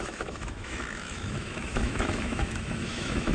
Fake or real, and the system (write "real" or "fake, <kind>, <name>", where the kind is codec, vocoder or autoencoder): fake, autoencoder, DAC-VAE